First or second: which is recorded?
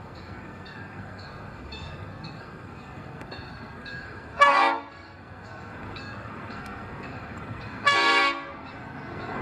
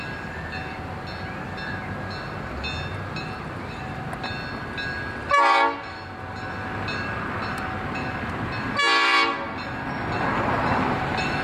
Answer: second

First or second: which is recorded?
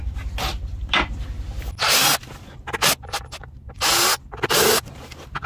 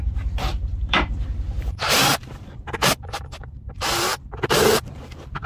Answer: first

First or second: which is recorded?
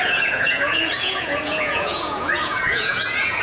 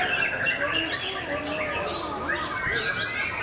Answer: second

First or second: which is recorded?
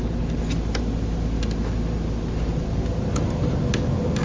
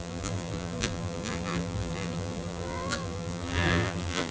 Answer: first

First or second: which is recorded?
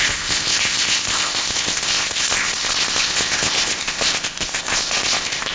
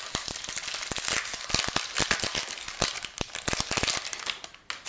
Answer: second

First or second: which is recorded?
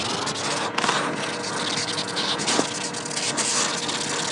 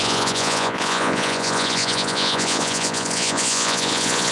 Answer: first